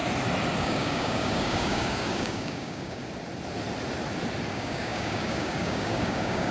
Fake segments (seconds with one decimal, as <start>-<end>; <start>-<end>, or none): 0.6-3.0; 4.5-6.5